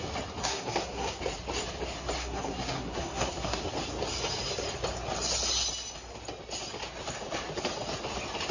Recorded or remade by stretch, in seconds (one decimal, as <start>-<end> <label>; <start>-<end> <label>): 0.0-0.4 recorded; 0.4-1.2 remade; 1.2-2.2 recorded; 2.2-3.6 remade; 3.6-8.5 recorded